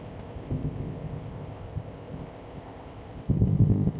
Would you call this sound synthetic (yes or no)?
yes